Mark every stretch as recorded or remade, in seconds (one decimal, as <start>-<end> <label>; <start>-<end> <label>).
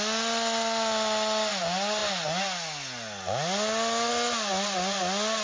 0.0-5.4 recorded